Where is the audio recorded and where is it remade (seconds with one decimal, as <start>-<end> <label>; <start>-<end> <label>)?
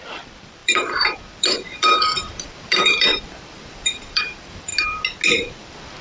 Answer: 0.0-4.7 remade; 4.7-5.5 recorded; 5.5-6.0 remade